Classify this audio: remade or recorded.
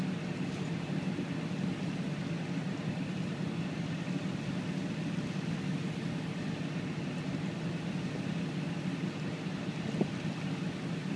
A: recorded